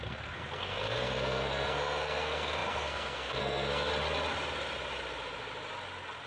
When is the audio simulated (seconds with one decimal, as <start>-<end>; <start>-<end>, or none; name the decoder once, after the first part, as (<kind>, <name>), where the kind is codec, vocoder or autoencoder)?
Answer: 0.0-3.9 (codec, SNAC)